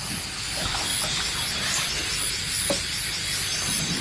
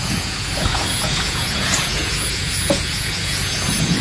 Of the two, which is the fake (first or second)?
second